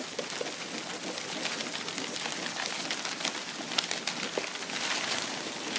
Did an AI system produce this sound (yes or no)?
no